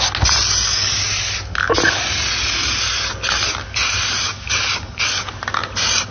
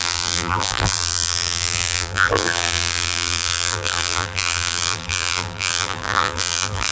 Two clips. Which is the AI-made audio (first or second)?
second